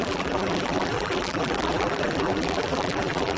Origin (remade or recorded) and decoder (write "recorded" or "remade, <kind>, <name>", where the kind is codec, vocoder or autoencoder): remade, vocoder, BigVGAN v2